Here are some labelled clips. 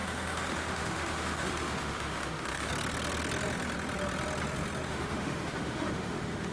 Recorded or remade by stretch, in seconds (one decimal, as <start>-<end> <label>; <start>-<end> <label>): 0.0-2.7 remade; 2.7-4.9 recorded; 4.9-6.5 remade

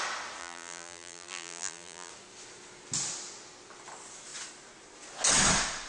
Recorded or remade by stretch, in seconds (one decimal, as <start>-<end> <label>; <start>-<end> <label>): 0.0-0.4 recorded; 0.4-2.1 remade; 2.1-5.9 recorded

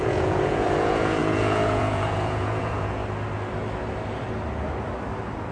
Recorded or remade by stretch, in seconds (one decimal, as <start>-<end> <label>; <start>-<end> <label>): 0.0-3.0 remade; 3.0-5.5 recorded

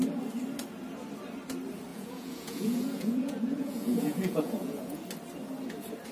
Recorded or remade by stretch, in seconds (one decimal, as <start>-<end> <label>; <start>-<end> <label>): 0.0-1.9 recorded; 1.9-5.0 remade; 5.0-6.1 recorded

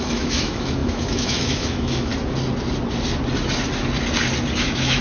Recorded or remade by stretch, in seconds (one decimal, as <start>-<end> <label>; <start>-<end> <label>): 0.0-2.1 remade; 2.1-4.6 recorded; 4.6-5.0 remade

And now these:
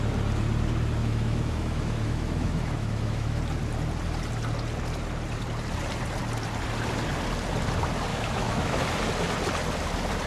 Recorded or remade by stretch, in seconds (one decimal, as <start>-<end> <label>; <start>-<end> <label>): 0.0-1.0 recorded; 1.0-3.4 remade; 3.4-8.1 recorded; 8.1-8.8 remade; 8.8-10.3 recorded

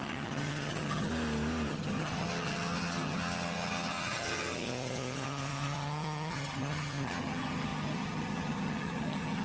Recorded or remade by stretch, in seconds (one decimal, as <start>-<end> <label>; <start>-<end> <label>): 0.0-1.1 remade; 1.1-1.7 recorded; 1.7-9.4 remade